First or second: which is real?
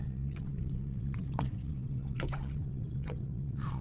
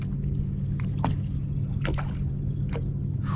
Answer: second